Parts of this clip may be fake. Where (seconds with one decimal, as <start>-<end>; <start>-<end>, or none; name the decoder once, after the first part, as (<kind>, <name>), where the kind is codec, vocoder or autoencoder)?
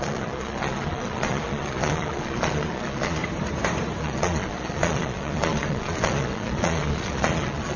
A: 0.0-3.2 (vocoder, Vocos); 4.0-7.8